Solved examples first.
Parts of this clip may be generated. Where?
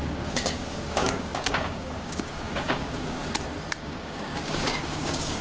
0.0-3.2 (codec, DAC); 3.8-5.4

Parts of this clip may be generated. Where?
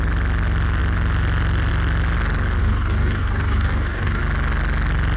2.6-4.2 (codec, DAC)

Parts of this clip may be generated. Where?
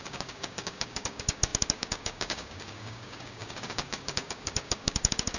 0.0-5.4 (codec, DAC)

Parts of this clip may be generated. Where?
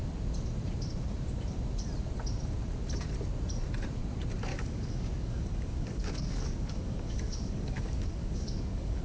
4.5-9.0 (codec, DAC)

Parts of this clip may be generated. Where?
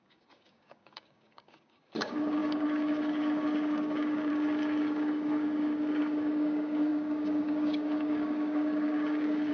0.0-9.5 (codec, DAC)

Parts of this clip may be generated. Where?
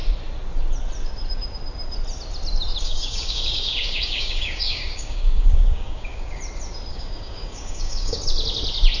2.8-6.4 (codec, DAC); 6.9-8.2